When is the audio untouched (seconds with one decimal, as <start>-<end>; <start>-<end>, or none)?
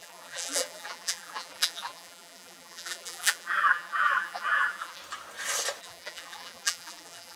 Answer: 5.0-5.8